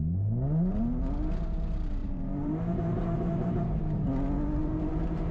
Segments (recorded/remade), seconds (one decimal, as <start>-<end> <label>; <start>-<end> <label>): 0.0-2.0 recorded; 2.0-3.8 remade; 3.8-4.6 recorded; 4.6-5.3 remade